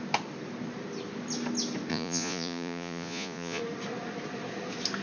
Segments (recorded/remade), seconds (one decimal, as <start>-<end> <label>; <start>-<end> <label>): 0.0-1.9 recorded; 1.9-3.6 remade; 3.6-5.0 recorded